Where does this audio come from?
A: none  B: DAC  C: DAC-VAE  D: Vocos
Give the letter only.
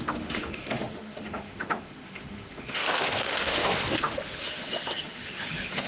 C